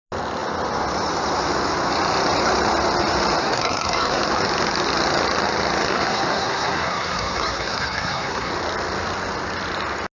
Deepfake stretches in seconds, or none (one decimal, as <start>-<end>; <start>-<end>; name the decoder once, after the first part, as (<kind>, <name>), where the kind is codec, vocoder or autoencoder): 3.4-4.2 (codec, SNAC); 5.9-8.5